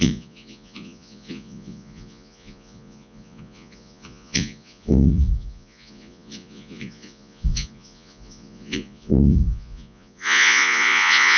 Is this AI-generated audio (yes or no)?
yes